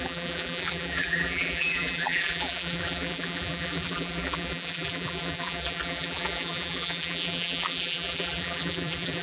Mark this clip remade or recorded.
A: remade